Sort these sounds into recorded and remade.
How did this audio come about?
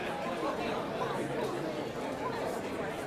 recorded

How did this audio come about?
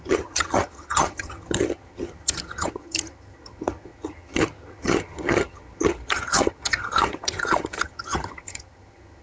remade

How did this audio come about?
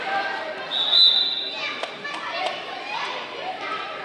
recorded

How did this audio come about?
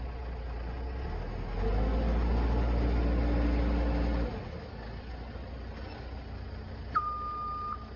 recorded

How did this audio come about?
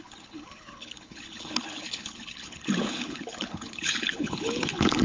remade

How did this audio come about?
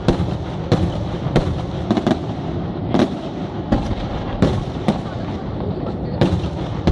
recorded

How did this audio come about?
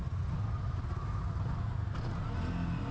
recorded